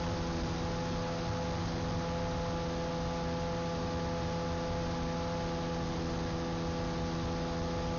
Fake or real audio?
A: real